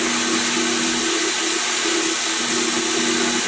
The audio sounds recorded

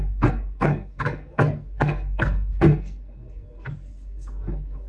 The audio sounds remade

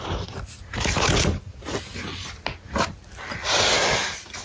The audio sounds recorded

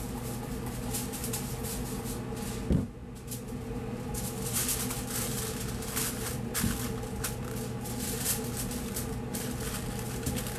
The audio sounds recorded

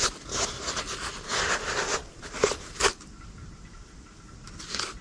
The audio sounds recorded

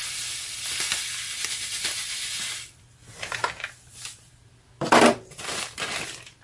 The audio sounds recorded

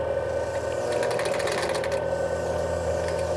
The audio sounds recorded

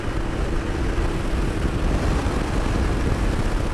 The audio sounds recorded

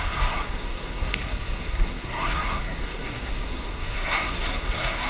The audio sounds remade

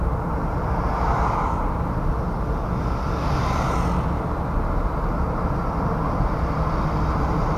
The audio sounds recorded